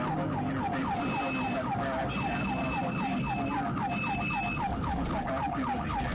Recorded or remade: recorded